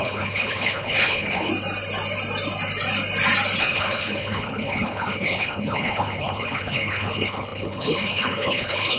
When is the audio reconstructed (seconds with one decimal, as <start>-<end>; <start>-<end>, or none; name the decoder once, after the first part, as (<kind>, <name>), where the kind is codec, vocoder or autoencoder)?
0.0-1.5 (codec, HILCodec); 3.6-9.0